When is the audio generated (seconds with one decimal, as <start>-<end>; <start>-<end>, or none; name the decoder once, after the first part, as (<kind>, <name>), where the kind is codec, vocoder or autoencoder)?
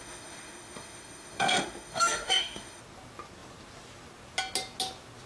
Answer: 0.0-2.8 (autoencoder, DAC-VAE)